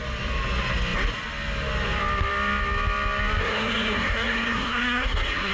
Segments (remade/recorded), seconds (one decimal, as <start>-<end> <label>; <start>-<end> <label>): 0.0-3.4 recorded; 3.4-5.5 remade